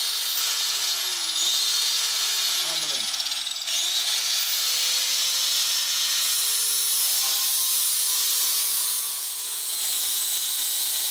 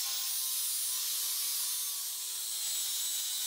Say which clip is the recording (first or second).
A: second